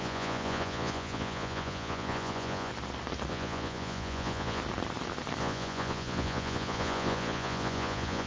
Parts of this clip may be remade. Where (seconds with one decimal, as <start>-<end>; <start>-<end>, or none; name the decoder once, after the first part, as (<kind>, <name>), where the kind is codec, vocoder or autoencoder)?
0.0-2.7 (vocoder, Vocos); 3.3-4.6; 5.4-8.3